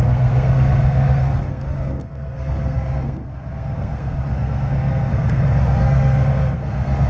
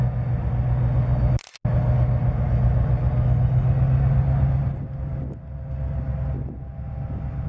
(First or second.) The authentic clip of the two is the second